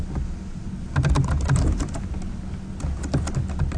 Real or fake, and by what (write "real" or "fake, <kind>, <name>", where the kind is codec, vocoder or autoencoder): real